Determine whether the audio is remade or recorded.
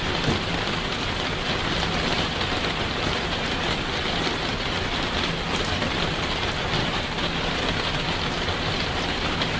recorded